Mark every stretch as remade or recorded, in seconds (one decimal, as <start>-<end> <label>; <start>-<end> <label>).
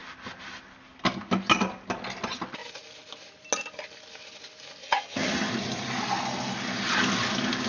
0.0-4.8 recorded; 4.8-5.5 remade; 5.5-7.7 recorded